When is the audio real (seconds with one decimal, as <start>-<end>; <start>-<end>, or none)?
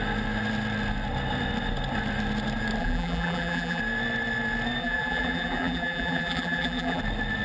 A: 0.0-2.8; 3.8-4.8; 7.0-7.4